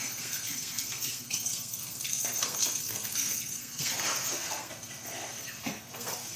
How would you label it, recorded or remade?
remade